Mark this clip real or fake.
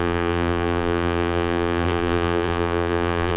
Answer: fake